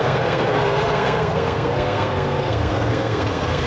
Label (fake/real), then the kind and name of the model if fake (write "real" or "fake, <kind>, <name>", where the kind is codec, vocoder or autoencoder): fake, codec, SNAC